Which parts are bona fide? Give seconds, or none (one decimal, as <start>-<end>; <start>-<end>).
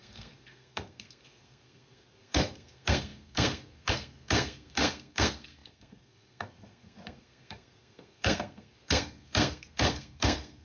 none